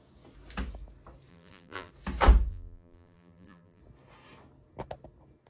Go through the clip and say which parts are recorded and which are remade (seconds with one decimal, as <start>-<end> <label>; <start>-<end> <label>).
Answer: 0.0-1.3 recorded; 1.3-1.9 remade; 1.9-2.5 recorded; 2.5-3.8 remade; 3.8-5.5 recorded